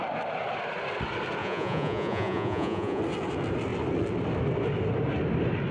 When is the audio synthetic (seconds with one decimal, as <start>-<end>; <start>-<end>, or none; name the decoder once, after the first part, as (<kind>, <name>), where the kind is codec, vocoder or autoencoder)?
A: 1.4-3.0 (vocoder, Vocos)